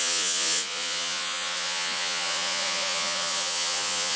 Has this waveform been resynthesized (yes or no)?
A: yes